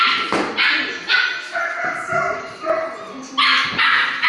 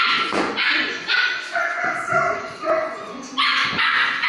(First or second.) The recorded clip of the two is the first